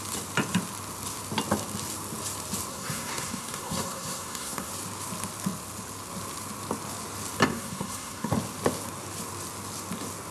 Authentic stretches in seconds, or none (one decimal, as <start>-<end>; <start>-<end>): 0.0-2.7; 4.7-7.5; 8.3-10.3

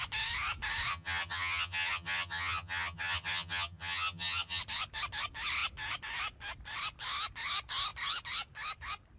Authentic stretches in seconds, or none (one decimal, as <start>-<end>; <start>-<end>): 0.0-0.9; 4.6-9.2

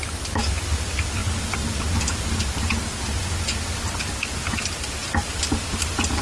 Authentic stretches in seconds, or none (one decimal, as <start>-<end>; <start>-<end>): 0.0-6.2